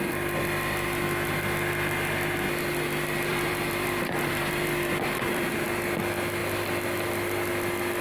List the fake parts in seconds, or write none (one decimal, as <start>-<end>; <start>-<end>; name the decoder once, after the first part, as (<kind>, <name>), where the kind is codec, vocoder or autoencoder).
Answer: 3.3-5.5 (vocoder, BigVGAN v2)